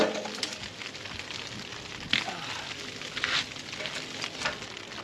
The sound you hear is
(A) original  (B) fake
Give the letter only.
A